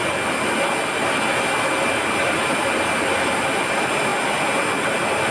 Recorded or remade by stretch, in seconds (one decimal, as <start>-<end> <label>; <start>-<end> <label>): 0.0-2.6 recorded; 2.6-3.5 remade; 3.5-5.3 recorded